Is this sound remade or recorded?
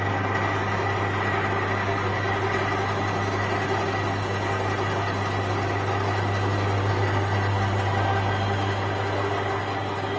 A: recorded